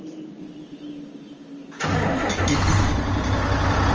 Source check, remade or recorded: recorded